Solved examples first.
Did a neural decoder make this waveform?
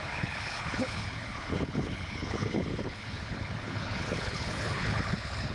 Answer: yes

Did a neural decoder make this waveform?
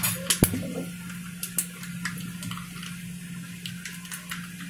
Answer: no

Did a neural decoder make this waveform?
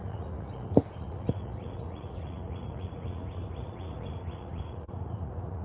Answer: yes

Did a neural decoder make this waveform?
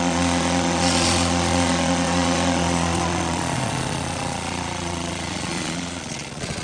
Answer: yes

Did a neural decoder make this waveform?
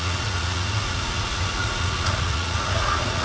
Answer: yes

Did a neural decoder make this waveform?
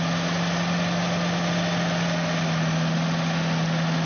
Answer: no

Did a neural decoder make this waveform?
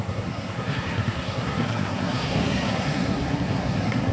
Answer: yes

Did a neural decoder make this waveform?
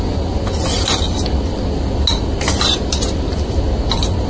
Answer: no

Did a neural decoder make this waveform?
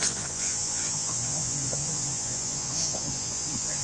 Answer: yes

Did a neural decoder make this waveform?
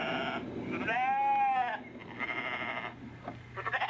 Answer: no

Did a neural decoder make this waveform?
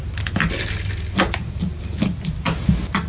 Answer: no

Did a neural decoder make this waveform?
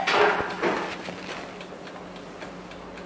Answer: no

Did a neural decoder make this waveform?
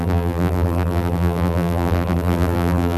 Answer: yes